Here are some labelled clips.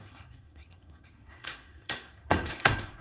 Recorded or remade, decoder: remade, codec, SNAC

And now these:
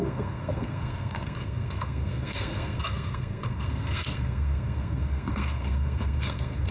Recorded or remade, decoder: remade, codec, SNAC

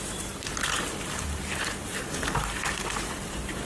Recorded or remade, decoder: recorded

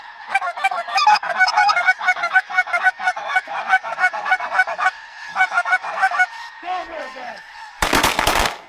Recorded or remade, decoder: remade, codec, SNAC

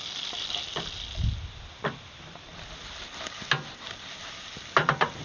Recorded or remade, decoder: recorded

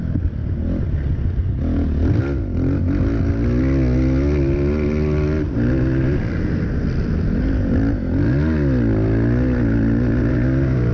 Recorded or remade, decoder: recorded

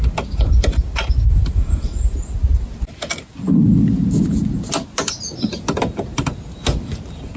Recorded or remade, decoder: recorded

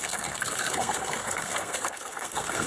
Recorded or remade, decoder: remade, codec, SNAC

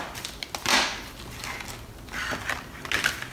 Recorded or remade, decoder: recorded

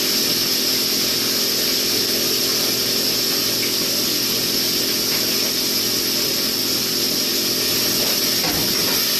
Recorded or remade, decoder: recorded